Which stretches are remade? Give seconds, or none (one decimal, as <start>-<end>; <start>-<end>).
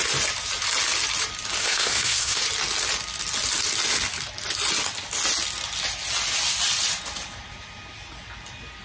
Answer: 1.6-2.4